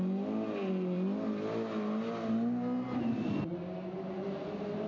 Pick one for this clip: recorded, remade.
recorded